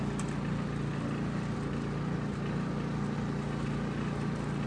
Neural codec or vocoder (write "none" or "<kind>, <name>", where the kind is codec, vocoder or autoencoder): none